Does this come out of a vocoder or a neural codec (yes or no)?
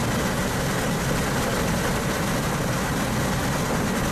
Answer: no